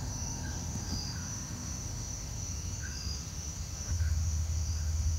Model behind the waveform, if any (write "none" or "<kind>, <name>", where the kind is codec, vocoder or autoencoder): autoencoder, DAC-VAE